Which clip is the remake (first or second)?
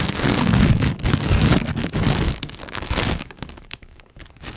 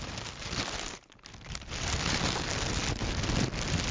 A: first